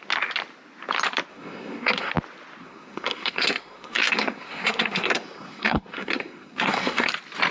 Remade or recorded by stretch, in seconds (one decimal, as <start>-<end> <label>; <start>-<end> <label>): 0.0-1.3 recorded; 1.3-2.1 remade; 2.1-2.6 recorded; 2.6-7.1 remade; 7.1-7.5 recorded